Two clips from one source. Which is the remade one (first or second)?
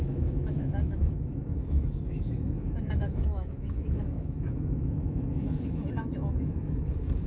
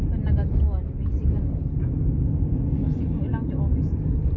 first